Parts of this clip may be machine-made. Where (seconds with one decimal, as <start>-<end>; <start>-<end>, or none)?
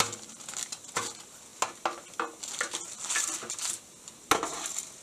none